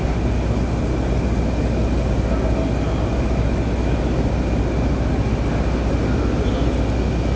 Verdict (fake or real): real